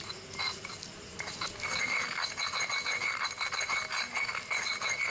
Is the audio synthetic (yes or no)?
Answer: no